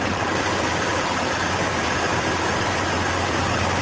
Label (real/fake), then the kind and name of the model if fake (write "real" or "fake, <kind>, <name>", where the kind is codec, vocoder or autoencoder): fake, vocoder, BigVGAN v2